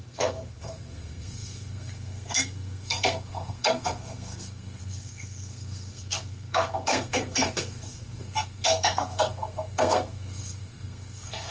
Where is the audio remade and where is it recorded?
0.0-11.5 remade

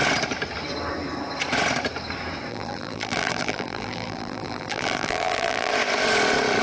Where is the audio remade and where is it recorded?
0.0-2.5 recorded; 2.5-5.7 remade; 5.7-6.6 recorded

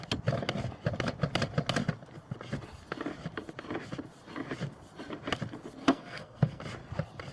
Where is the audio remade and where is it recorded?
0.0-5.8 recorded; 5.8-6.6 remade; 6.6-7.3 recorded